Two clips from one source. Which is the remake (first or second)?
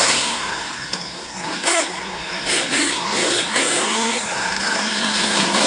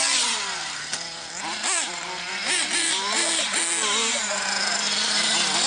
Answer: first